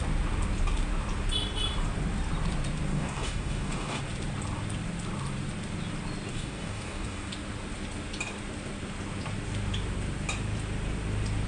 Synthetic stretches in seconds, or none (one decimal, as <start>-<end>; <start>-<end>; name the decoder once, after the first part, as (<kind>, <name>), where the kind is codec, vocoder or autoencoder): 2.9-4.0 (codec, DAC); 6.3-7.3